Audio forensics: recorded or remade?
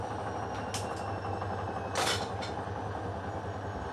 recorded